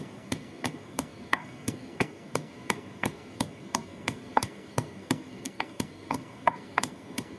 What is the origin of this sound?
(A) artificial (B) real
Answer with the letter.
A